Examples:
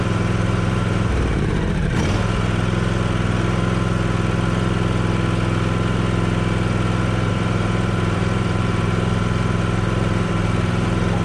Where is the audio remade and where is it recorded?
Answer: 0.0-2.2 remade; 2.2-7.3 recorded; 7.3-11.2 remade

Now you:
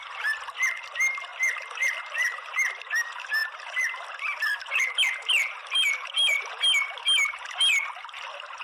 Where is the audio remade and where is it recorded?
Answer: 0.0-1.3 recorded; 1.3-2.7 remade; 2.7-3.4 recorded; 3.4-4.7 remade; 4.7-5.6 recorded; 5.6-6.5 remade; 6.5-8.6 recorded

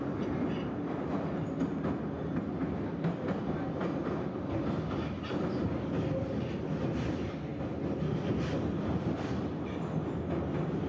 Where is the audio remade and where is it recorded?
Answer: 0.0-10.9 recorded

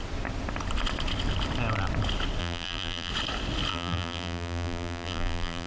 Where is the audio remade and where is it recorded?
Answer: 0.0-2.4 recorded; 2.4-3.1 remade; 3.1-3.7 recorded; 3.7-5.7 remade

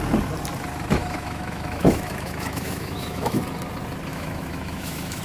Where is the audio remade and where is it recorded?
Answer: 0.0-1.0 recorded; 1.0-3.4 remade; 3.4-4.1 recorded; 4.1-5.2 remade

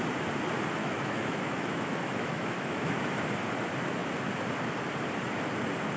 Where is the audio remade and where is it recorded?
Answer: 0.0-0.8 recorded; 0.8-3.1 remade; 3.1-6.0 recorded

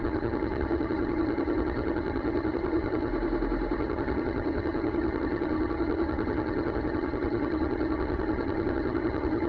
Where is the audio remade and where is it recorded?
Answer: 0.0-3.1 remade; 3.1-3.8 recorded; 3.8-9.5 remade

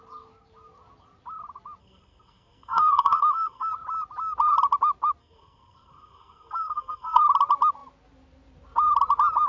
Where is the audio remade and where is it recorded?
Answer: 0.0-1.8 recorded; 1.8-3.7 remade; 3.7-5.2 recorded; 5.2-7.2 remade; 7.2-9.5 recorded